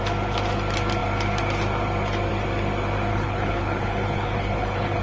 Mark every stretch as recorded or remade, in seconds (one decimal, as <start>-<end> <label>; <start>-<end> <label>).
0.0-3.1 recorded; 3.1-5.0 remade